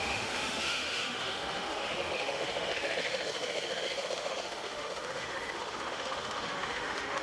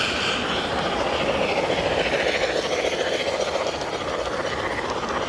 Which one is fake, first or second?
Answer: first